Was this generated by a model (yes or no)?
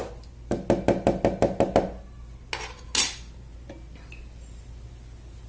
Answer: no